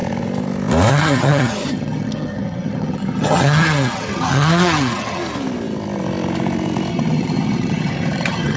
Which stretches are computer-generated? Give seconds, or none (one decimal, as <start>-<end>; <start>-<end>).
0.9-5.2; 6.9-8.6